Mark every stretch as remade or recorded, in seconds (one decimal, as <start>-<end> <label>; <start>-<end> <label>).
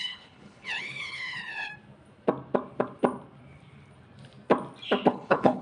0.0-1.7 remade; 1.7-5.1 recorded; 5.1-5.6 remade